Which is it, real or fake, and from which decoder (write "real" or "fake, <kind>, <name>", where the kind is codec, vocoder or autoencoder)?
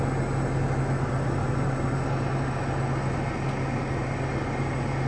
real